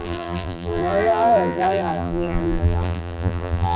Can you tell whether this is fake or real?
fake